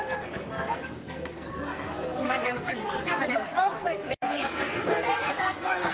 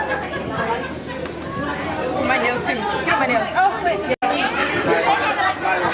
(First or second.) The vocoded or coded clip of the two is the first